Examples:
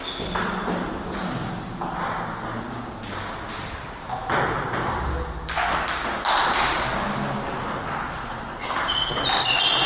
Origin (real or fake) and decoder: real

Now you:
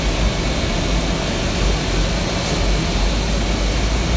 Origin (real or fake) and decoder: real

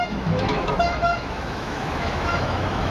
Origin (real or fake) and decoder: fake, autoencoder, DAC-VAE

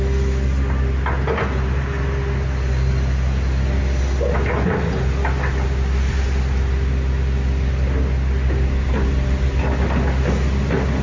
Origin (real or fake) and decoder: real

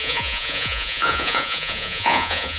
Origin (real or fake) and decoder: fake, vocoder, Vocos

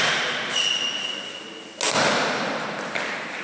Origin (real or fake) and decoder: real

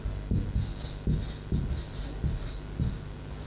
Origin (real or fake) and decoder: real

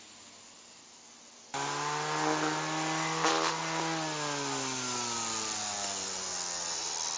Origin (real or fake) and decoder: real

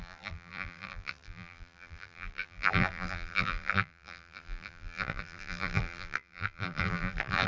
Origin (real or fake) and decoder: fake, vocoder, BigVGAN v2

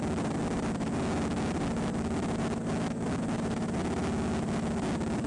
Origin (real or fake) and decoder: real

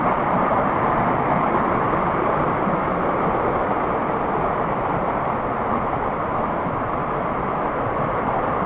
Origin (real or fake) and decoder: real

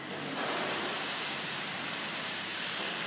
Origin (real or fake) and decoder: fake, vocoder, BigVGAN v2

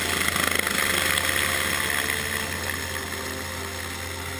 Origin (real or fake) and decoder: real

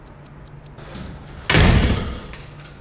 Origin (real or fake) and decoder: real